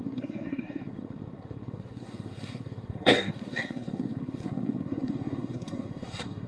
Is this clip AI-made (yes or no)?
yes